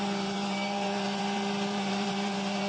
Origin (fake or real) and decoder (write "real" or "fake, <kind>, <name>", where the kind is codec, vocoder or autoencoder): fake, vocoder, BigVGAN v2